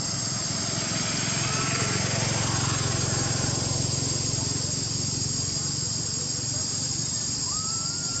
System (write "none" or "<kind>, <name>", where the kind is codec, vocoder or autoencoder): none